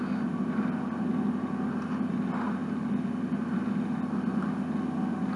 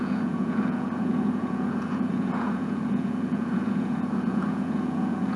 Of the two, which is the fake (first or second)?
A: second